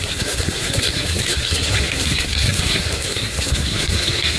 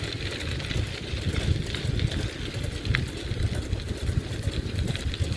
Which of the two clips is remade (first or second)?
first